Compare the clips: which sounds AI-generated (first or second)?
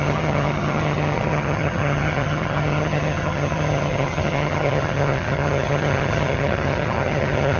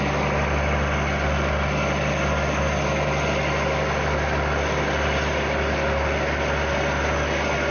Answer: first